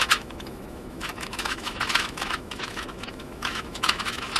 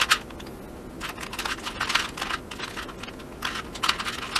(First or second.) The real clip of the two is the second